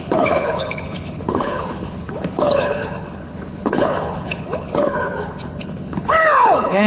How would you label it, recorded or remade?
remade